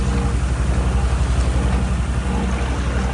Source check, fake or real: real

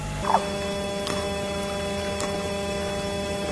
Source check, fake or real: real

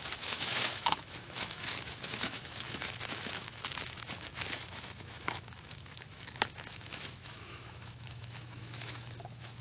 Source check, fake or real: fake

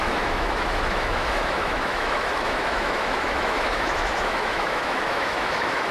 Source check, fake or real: fake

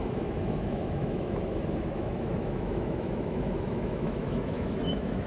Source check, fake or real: fake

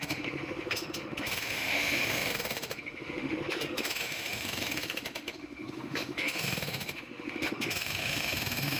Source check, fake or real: fake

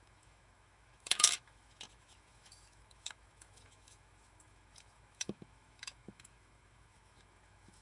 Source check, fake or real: fake